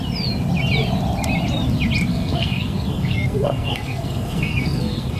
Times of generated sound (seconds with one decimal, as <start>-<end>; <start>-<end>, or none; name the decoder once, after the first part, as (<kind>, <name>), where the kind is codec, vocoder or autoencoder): 2.1-5.2 (codec, SNAC)